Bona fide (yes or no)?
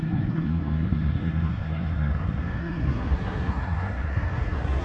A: no